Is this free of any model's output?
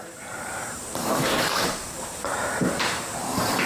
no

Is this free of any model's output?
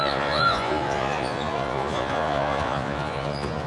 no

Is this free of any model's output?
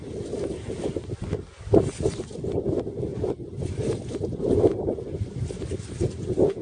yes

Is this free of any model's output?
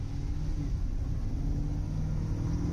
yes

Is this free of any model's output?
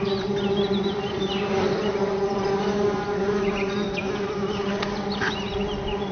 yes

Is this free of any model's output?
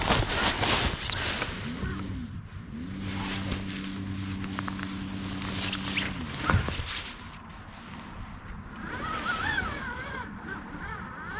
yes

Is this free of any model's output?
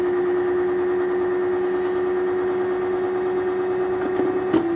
yes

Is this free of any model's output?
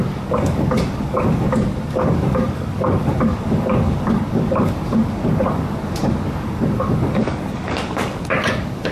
no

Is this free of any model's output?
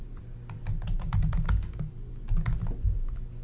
yes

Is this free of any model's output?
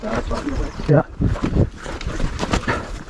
no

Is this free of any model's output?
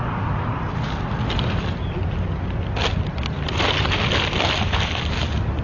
yes